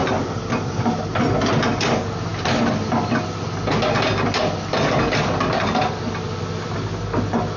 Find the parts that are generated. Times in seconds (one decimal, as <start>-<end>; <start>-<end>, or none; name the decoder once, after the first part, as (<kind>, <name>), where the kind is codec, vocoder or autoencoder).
none

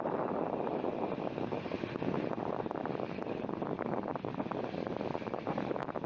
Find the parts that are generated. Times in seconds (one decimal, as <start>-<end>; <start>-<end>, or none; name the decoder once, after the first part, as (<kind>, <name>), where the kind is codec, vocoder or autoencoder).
0.0-6.1 (vocoder, BigVGAN v2)

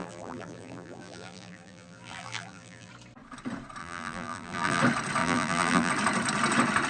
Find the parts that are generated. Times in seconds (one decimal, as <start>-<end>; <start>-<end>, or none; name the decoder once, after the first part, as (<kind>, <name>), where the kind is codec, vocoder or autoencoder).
0.0-2.9 (vocoder, BigVGAN v2); 3.8-4.8; 5.2-5.9

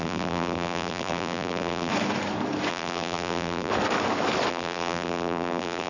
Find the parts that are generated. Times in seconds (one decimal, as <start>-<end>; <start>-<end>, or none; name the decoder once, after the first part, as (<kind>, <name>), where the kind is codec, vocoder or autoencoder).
0.0-1.9 (vocoder, BigVGAN v2); 2.7-3.7; 4.5-5.9

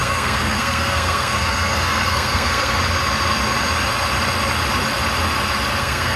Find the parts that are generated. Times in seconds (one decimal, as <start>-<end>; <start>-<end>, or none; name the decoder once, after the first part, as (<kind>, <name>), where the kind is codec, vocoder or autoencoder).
0.0-2.8 (codec, SNAC); 5.8-6.2